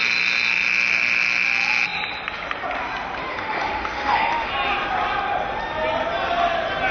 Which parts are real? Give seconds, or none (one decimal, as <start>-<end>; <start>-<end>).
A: 0.0-3.3; 4.5-6.9